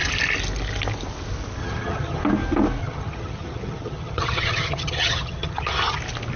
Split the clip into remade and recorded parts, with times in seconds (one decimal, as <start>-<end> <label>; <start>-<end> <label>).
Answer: 0.0-1.6 recorded; 1.6-2.2 remade; 2.2-2.8 recorded; 2.8-6.0 remade; 6.0-6.4 recorded